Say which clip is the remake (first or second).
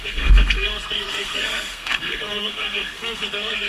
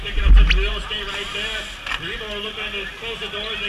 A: first